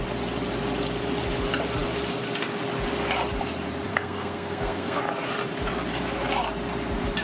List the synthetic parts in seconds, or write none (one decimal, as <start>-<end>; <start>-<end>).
3.9-5.0